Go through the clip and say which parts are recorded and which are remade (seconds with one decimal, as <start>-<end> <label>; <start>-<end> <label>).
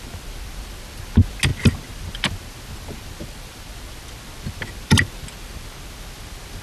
0.0-6.6 recorded